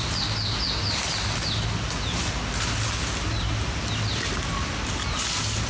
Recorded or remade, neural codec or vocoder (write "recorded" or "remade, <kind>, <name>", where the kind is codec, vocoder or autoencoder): recorded